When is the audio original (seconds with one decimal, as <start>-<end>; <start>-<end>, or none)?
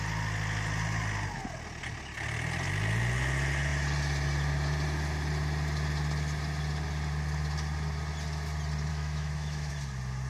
0.0-8.9; 9.7-10.3